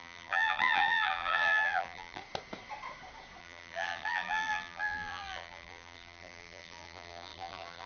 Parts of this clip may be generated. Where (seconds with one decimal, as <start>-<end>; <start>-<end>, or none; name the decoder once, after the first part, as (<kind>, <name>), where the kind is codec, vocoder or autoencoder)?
0.0-2.2 (vocoder, BigVGAN v2); 3.4-7.9